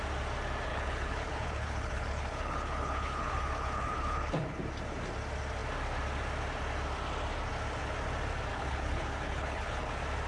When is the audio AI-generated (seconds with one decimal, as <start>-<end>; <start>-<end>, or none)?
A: 0.7-4.6; 8.5-9.9